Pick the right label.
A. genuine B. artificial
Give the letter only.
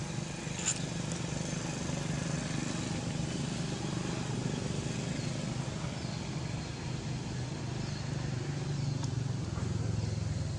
A